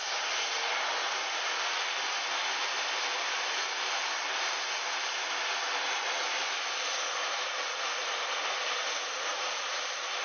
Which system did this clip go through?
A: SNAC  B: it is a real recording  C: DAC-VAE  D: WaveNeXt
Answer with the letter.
B